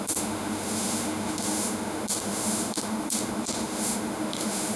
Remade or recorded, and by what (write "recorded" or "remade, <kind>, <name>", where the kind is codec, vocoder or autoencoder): remade, autoencoder, DAC-VAE